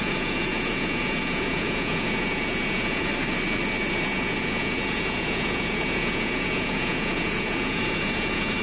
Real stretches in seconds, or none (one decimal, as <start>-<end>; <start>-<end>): 3.1-3.9